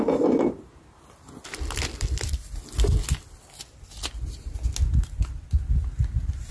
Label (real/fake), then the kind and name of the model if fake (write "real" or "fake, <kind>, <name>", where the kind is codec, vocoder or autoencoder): real